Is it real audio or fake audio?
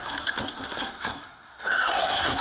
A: fake